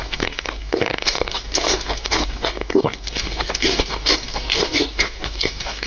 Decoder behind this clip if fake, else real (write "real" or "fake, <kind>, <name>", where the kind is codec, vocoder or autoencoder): fake, codec, DAC